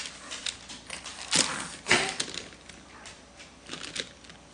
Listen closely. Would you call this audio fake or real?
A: real